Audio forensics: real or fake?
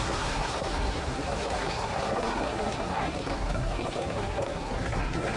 fake